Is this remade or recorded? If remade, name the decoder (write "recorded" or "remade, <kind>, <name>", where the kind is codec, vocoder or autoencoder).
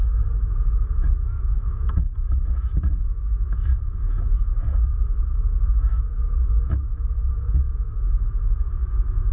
remade, autoencoder, DAC-VAE